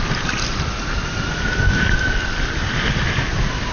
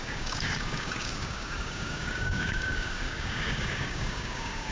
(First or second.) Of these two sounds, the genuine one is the first